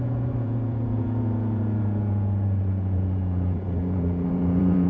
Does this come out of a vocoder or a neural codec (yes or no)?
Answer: yes